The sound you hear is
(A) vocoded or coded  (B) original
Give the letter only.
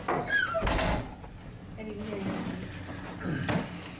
B